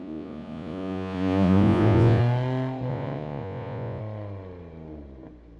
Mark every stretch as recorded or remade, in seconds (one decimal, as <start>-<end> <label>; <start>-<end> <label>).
0.0-2.2 remade; 2.2-2.9 recorded; 2.9-4.0 remade; 4.0-5.6 recorded